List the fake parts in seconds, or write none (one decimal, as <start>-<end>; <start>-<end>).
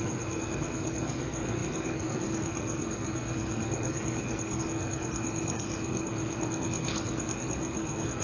0.0-8.2